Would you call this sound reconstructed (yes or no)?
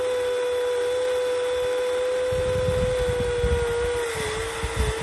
no